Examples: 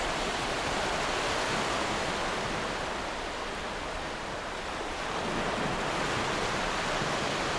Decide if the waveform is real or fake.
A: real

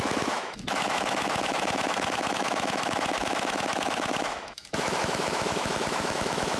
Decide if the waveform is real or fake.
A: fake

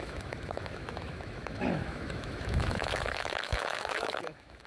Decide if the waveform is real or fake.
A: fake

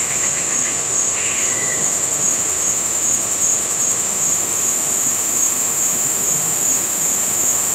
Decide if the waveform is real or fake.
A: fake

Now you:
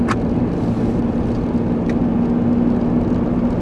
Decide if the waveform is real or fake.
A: real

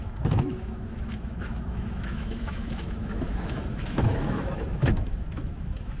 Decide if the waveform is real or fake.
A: fake